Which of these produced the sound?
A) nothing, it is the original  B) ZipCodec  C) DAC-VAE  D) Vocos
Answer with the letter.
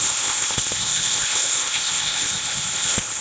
B